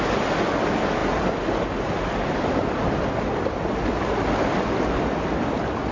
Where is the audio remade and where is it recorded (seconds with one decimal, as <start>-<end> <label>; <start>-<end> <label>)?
0.0-5.9 recorded